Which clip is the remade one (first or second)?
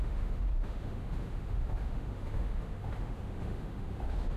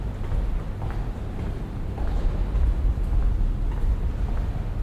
first